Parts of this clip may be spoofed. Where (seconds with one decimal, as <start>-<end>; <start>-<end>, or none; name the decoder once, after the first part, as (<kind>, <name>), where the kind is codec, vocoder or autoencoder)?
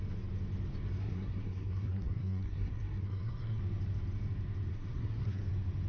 1.0-3.6 (codec, SNAC); 4.7-5.4